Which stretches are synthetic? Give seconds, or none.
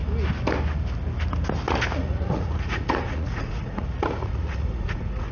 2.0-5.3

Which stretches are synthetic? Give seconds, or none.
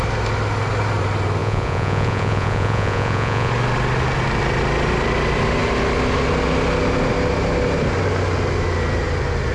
1.4-3.5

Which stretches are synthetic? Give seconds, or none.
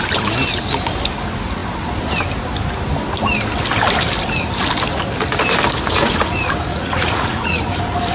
6.7-7.6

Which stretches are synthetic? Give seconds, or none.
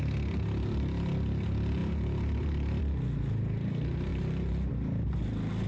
none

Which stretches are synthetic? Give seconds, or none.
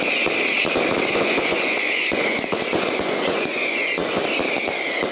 1.1-4.2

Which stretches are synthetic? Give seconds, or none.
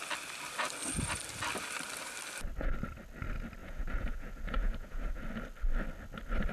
3.6-5.2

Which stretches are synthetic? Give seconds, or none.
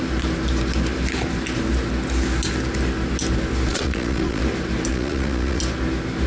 3.7-4.4; 4.9-5.6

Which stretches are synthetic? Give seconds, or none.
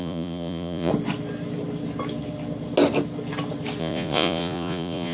0.0-0.9; 3.8-5.1